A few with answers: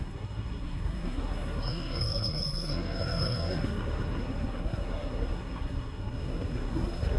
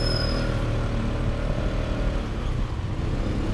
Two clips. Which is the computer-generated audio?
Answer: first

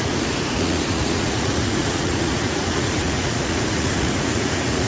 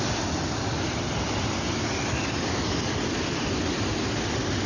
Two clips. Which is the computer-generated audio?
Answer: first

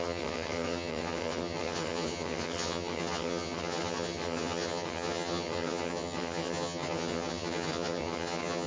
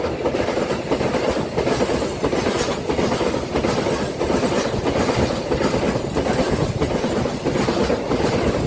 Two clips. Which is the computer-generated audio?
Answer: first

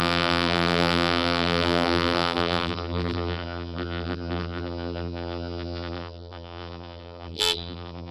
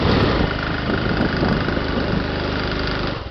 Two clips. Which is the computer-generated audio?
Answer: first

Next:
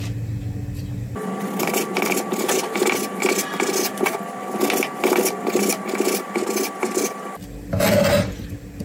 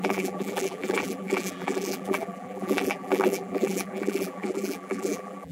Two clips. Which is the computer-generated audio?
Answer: second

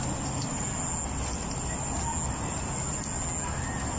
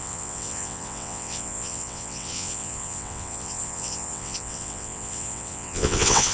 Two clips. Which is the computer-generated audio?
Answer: second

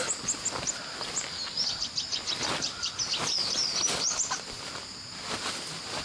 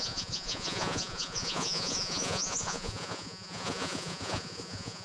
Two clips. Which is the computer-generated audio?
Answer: second